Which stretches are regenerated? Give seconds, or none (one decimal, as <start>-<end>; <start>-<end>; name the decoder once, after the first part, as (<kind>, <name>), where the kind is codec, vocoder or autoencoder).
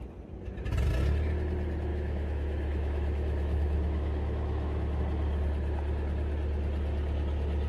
1.9-5.0 (autoencoder, DAC-VAE)